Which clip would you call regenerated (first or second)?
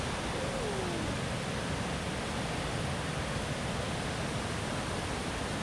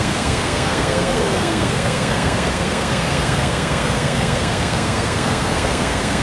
second